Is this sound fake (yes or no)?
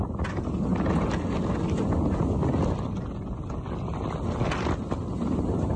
no